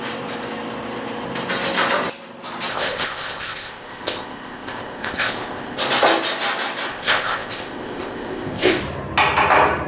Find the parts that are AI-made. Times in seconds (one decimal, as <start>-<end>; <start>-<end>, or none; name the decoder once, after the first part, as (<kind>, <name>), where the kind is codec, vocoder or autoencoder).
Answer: 2.7-5.8 (codec, ZipCodec); 6.9-8.8